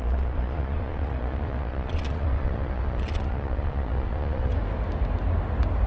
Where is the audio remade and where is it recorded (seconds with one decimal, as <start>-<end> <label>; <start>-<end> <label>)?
0.0-4.5 remade; 4.5-5.9 recorded